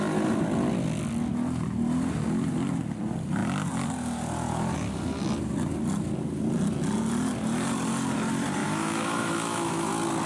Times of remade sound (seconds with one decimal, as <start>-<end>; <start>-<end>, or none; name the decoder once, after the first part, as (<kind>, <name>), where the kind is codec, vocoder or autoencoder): 8.6-9.9 (autoencoder, DAC-VAE)